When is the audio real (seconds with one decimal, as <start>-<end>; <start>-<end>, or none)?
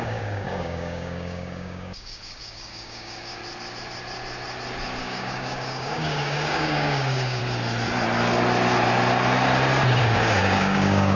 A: 3.4-5.0; 7.4-10.0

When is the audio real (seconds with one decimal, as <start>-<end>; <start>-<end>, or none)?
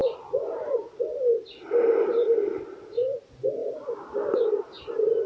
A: 0.0-5.3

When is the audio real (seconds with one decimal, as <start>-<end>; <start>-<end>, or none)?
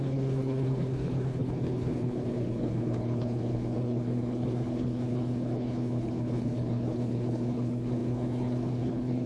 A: none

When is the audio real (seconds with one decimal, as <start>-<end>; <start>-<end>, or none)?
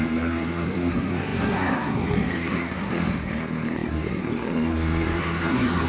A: none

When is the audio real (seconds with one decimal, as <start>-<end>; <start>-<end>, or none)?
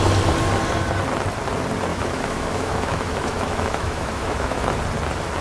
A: 0.0-1.9; 4.8-5.4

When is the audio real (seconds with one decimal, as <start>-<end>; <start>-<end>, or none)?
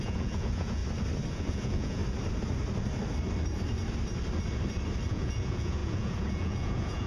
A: 0.8-1.3; 2.0-5.1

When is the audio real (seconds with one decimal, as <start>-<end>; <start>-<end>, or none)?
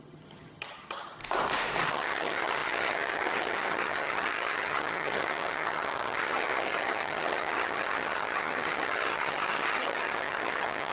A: 1.2-1.9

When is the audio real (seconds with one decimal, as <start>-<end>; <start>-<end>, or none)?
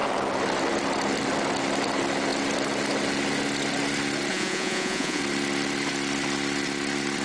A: 0.0-4.3; 5.2-7.2